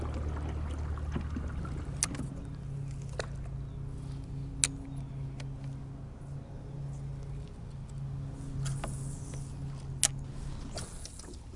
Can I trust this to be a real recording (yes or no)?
yes